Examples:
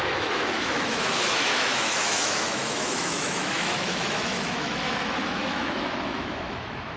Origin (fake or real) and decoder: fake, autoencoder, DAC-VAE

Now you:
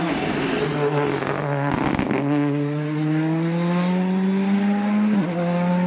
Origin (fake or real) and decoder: real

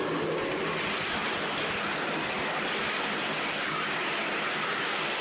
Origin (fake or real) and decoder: real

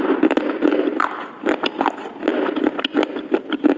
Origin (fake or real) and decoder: real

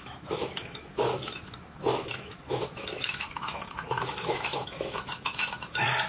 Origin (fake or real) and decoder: fake, autoencoder, DAC-VAE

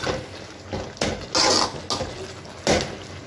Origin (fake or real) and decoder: real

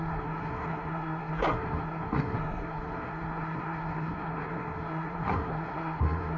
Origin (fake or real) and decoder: fake, codec, SNAC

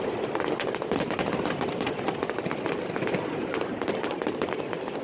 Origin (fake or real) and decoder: fake, vocoder, BigVGAN v2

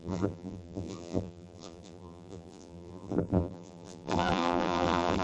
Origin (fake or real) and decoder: fake, vocoder, BigVGAN v2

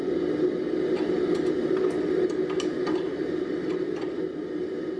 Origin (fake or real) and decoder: real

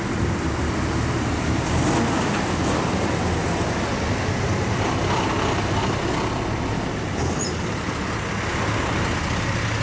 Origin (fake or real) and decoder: real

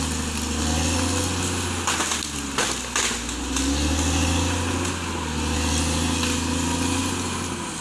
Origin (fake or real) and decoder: real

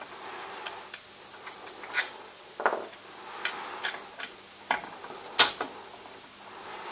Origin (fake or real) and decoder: real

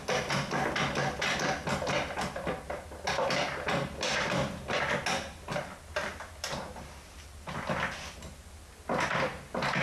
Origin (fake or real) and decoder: real